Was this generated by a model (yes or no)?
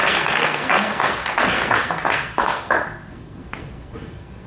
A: yes